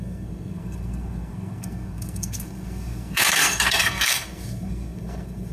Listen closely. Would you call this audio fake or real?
fake